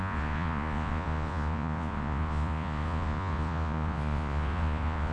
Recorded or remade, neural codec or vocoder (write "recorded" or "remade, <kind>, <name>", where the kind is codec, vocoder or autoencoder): remade, vocoder, Vocos